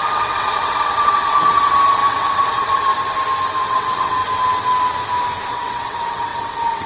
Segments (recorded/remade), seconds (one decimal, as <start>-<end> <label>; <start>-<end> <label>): 0.0-2.9 remade; 2.9-3.6 recorded; 3.6-4.2 remade; 4.2-5.5 recorded; 5.5-6.9 remade